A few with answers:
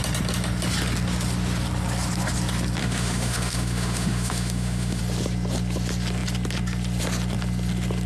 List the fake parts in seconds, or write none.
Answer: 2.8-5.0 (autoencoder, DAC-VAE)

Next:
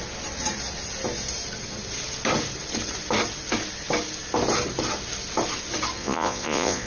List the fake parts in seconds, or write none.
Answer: 6.0-6.9 (vocoder, Vocos)